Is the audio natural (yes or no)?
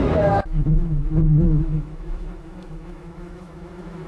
no